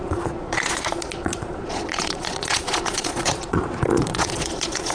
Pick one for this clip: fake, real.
fake